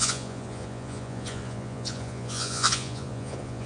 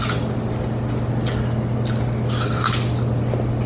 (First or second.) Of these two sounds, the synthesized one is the first